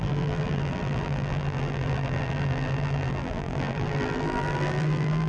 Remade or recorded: remade